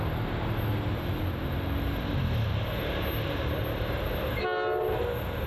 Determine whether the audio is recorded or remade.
recorded